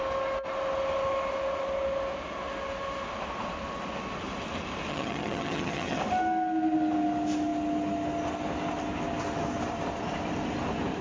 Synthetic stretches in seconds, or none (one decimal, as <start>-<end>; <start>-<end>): 4.9-6.0